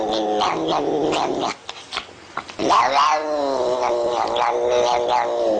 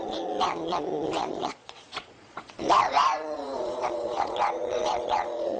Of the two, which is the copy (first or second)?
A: second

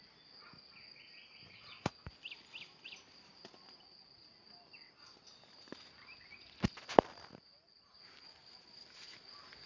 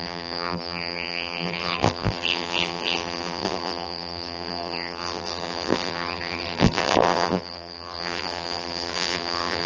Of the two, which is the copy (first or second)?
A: second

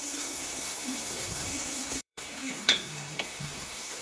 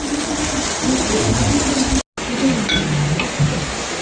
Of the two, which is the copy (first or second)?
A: first